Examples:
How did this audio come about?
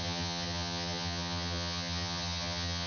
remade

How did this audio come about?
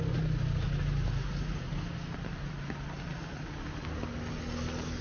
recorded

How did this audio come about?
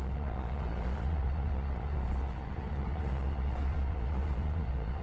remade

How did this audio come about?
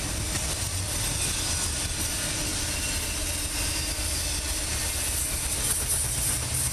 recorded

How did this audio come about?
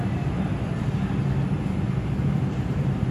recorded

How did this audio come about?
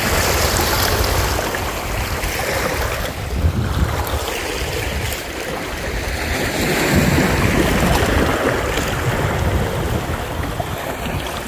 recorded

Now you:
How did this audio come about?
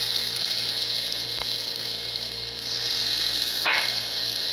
remade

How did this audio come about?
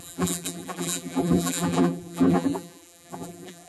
remade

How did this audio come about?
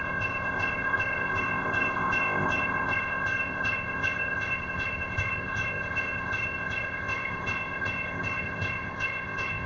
remade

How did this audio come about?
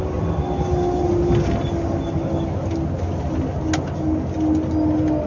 recorded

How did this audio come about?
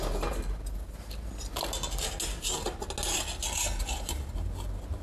recorded